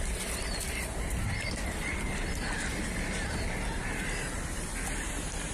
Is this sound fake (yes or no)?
yes